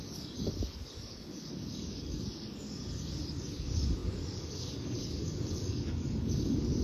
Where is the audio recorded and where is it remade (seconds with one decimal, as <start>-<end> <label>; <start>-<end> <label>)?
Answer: 0.0-6.8 remade